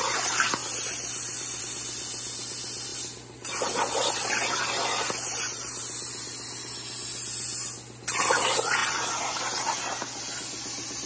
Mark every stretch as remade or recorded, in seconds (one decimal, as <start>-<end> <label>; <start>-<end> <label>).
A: 0.0-11.1 recorded

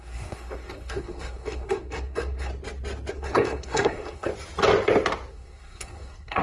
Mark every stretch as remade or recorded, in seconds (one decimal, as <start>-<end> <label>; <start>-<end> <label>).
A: 0.0-2.5 remade; 2.5-3.1 recorded; 3.1-4.3 remade; 4.3-5.3 recorded; 5.3-6.4 remade

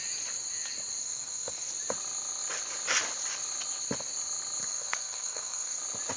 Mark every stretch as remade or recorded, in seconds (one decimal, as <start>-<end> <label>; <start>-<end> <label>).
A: 0.0-1.0 recorded; 1.0-1.7 remade; 1.7-4.6 recorded; 4.6-5.8 remade; 5.8-6.2 recorded

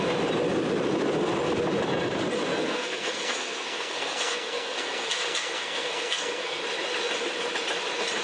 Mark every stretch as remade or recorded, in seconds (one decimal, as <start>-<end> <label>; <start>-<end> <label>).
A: 0.0-2.5 recorded; 2.5-6.6 remade; 6.6-8.2 recorded

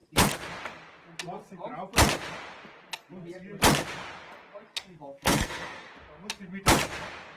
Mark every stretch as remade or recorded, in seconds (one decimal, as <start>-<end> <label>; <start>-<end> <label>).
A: 0.0-4.7 recorded; 4.7-5.9 remade; 5.9-7.4 recorded

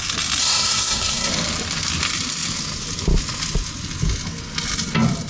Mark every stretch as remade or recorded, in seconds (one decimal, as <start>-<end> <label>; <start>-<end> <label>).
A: 0.0-0.4 recorded; 0.4-1.3 remade; 1.3-5.3 recorded

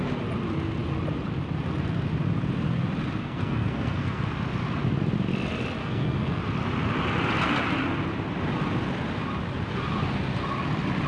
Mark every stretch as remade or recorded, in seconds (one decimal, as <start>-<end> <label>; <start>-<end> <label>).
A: 0.0-3.2 recorded; 3.2-4.2 remade; 4.2-5.8 recorded; 5.8-6.4 remade; 6.4-11.1 recorded